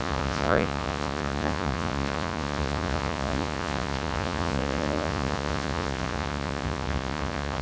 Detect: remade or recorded remade